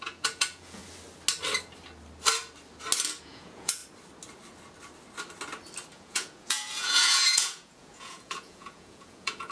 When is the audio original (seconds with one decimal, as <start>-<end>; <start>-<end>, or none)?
0.8-3.2; 3.8-5.9

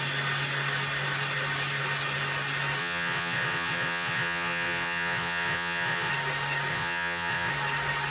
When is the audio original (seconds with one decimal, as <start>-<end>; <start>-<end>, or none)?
0.0-2.8; 6.1-6.7; 7.5-8.1

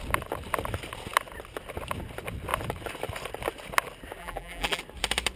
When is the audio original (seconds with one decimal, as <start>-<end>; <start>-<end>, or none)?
0.0-4.2; 4.8-5.4

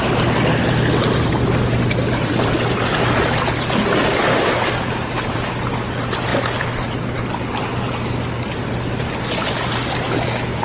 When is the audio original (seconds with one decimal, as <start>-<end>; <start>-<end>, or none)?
0.0-10.6

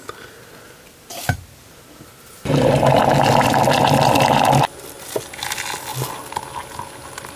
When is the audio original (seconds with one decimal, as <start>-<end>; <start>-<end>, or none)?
0.0-7.4

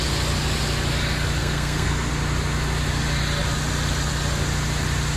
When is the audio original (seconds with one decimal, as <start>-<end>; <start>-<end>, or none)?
0.0-1.4; 2.1-5.2

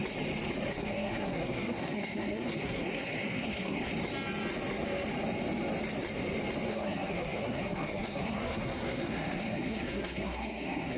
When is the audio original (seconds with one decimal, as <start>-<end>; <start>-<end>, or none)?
0.0-0.7; 3.9-6.7

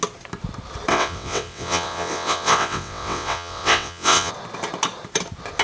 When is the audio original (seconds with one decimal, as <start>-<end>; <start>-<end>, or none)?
0.0-0.9; 4.3-5.6